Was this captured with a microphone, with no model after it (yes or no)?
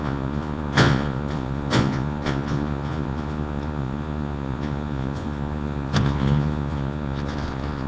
no